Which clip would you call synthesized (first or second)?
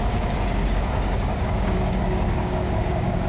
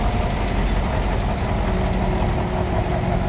first